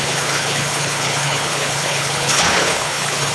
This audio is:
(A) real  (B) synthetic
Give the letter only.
B